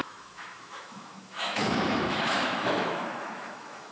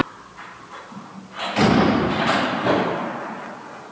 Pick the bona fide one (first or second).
second